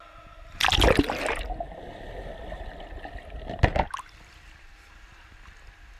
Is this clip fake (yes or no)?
no